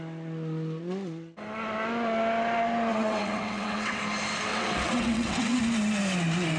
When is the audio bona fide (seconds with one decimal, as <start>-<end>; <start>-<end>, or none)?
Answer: 0.0-2.9; 4.0-4.5; 5.6-6.6